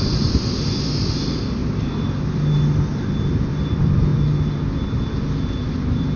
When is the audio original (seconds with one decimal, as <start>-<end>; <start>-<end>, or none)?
1.6-3.5; 4.1-5.6